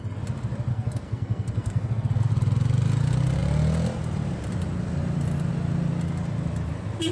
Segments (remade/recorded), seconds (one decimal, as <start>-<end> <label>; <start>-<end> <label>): 0.0-0.7 recorded; 0.7-2.3 remade; 2.3-7.1 recorded